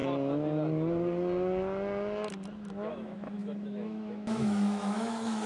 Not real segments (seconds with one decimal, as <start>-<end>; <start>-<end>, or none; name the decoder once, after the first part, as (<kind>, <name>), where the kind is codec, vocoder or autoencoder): 2.9-5.5 (autoencoder, DAC-VAE)